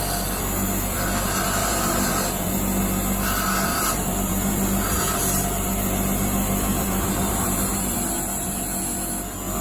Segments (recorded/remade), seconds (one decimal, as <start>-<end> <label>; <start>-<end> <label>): 0.0-1.6 recorded; 1.6-2.5 remade; 2.5-3.7 recorded; 3.7-8.7 remade; 8.7-9.6 recorded